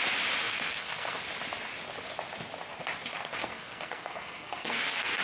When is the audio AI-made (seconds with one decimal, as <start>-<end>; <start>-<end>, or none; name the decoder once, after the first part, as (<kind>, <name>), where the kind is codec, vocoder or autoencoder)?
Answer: 0.4-1.2 (codec, SNAC); 3.1-5.2